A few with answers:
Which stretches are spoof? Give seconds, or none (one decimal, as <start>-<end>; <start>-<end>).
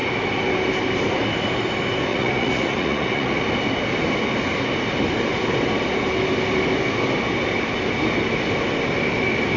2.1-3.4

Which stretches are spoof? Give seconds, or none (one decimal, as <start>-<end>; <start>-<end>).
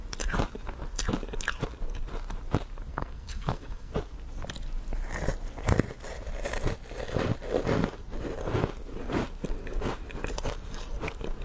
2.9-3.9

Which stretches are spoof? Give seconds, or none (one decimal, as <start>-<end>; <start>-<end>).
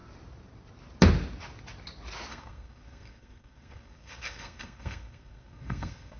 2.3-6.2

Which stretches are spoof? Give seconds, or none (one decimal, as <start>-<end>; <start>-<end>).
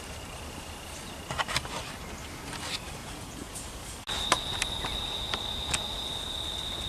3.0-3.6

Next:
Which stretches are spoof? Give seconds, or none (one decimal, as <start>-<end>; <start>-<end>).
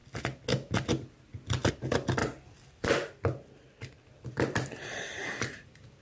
2.2-6.0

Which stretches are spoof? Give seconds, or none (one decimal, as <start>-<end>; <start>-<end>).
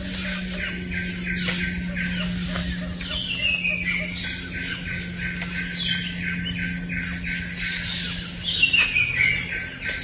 none